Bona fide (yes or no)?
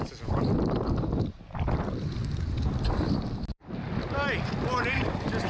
yes